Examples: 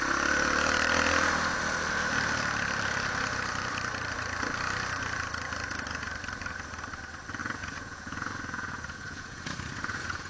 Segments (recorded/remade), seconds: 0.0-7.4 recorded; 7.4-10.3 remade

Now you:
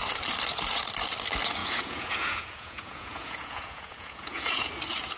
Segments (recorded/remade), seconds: 0.0-1.6 recorded; 1.6-4.7 remade; 4.7-5.2 recorded

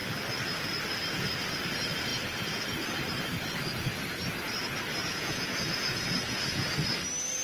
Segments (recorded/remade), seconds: 0.0-5.0 recorded; 5.0-6.7 remade; 6.7-7.4 recorded